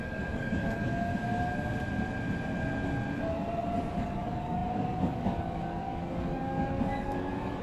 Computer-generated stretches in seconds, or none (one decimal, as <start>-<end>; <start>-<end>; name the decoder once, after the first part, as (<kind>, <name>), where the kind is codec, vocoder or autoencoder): 0.0-1.1 (codec, DAC); 3.9-7.6